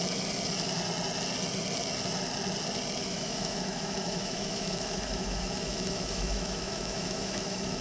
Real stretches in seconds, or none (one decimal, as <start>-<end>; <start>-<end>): 0.0-3.0